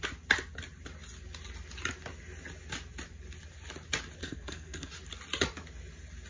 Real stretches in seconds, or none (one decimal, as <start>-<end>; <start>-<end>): 0.0-4.2; 4.9-6.3